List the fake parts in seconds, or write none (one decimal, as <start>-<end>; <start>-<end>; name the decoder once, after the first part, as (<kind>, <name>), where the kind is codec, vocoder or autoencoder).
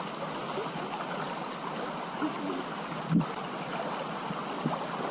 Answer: none